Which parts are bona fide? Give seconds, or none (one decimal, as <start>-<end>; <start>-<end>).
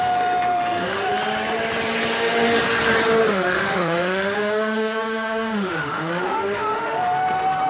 1.1-3.3